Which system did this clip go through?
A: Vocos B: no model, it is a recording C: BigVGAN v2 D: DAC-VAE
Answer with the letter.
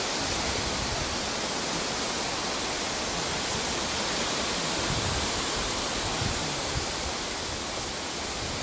B